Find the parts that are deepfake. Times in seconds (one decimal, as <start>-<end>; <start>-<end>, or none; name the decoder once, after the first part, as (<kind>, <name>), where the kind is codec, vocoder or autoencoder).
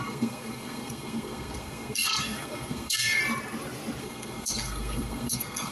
0.0-3.2 (codec, SNAC); 4.0-5.7